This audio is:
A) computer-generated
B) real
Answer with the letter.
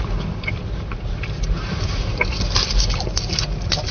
A